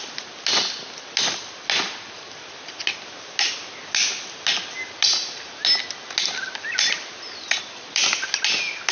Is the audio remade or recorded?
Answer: recorded